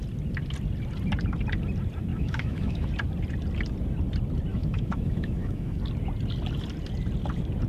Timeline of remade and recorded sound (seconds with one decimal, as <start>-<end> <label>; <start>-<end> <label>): 0.0-2.1 recorded; 2.1-2.9 remade; 2.9-4.5 recorded; 4.5-5.8 remade; 5.8-7.7 recorded